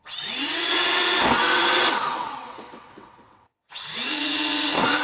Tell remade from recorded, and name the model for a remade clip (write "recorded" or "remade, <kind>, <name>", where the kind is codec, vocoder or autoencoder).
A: remade, vocoder, WaveNeXt